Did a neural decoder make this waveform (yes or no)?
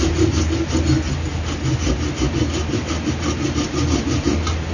no